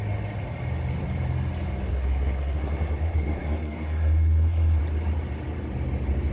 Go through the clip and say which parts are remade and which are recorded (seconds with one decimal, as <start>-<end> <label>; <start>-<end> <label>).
0.0-1.9 recorded; 1.9-4.8 remade; 4.8-6.3 recorded